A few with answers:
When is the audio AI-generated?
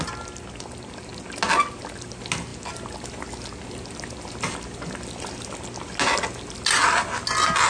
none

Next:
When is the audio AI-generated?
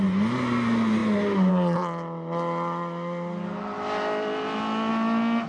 none